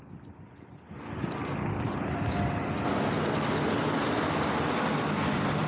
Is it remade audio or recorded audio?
recorded